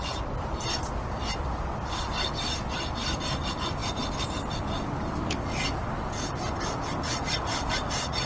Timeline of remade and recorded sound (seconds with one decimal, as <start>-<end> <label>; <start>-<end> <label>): 0.0-8.3 recorded